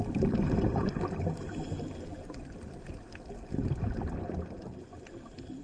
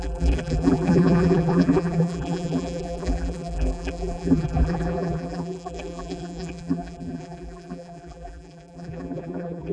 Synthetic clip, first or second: second